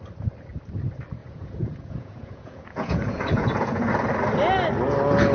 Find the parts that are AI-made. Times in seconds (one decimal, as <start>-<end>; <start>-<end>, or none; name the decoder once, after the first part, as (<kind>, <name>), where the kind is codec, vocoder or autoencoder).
1.2-3.9 (vocoder, Vocos)